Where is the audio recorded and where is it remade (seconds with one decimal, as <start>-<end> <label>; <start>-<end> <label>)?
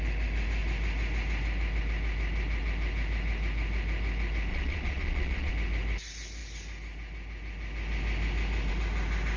0.0-4.5 recorded; 4.5-5.5 remade; 5.5-9.4 recorded